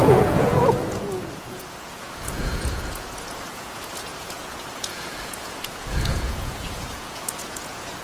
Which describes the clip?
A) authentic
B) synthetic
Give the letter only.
B